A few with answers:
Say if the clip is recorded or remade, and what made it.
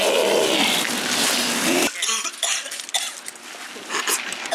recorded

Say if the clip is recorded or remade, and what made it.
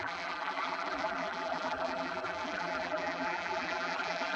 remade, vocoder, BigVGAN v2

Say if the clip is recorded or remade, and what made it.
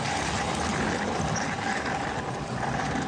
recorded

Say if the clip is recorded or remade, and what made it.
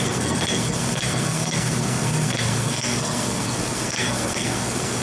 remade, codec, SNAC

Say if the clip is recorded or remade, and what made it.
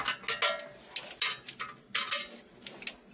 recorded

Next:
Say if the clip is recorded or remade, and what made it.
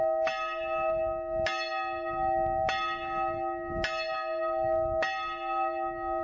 recorded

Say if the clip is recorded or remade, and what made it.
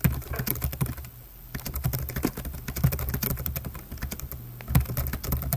recorded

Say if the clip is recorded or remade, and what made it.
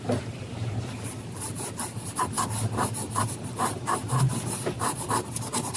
remade, vocoder, BigVGAN v2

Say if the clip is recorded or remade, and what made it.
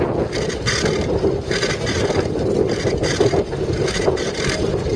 recorded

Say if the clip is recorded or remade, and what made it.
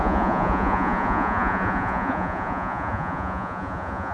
remade, vocoder, Vocos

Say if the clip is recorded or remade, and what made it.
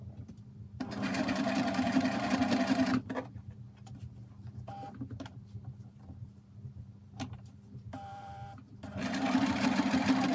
remade, vocoder, BigVGAN v2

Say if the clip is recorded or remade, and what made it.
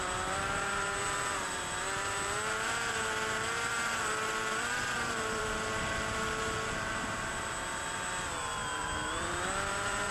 remade, vocoder, BigVGAN v2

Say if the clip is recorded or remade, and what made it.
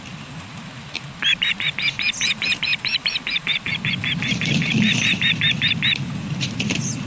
recorded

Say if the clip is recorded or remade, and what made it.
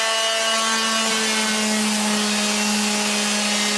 recorded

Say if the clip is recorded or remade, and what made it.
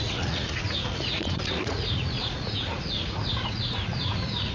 remade, vocoder, Vocos